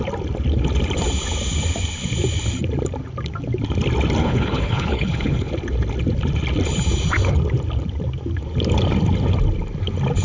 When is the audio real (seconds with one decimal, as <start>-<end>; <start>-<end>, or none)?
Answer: 0.0-4.2; 5.5-10.2